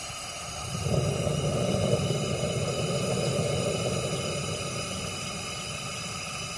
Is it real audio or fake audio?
real